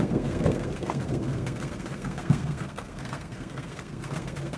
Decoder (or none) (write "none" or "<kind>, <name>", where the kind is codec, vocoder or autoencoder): codec, SNAC